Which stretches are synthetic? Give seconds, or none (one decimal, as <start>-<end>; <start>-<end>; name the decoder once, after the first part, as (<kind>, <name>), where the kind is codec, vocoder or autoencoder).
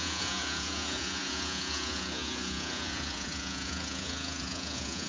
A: 0.0-5.1 (vocoder, Vocos)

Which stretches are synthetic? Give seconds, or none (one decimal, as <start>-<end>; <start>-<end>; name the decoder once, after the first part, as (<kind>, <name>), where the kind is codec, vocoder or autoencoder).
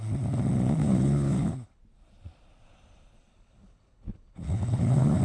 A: 0.8-1.8 (codec, HILCodec); 3.3-5.2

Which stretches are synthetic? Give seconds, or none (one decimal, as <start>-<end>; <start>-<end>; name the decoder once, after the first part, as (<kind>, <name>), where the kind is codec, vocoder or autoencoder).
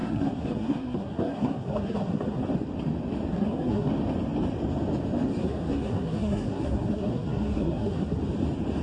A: 0.0-2.4 (codec, SNAC); 3.3-3.9; 5.4-8.2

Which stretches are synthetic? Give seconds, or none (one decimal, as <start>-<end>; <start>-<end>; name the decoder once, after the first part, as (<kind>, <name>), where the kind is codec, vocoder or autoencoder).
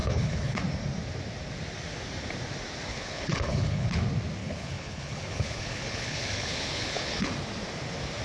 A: 0.0-0.6 (codec, HILCodec); 2.9-4.0; 4.4-7.3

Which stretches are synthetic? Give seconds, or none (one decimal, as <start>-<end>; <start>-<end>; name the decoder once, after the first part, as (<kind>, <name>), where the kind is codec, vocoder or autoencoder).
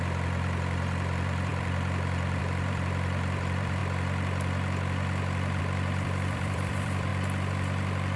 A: 0.0-3.8 (vocoder, BigVGAN v2); 5.6-7.1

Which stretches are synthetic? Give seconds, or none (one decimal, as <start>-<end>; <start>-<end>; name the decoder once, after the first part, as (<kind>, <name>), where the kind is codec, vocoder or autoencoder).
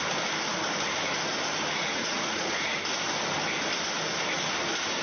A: 1.9-2.5 (vocoder, Vocos)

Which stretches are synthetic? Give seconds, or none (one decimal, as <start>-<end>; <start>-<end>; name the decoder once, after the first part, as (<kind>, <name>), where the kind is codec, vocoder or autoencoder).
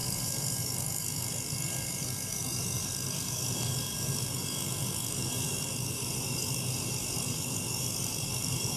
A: 0.0-8.8 (codec, DAC)